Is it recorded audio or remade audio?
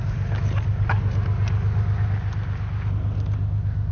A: recorded